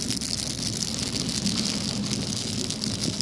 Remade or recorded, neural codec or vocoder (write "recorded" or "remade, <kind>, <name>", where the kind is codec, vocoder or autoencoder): recorded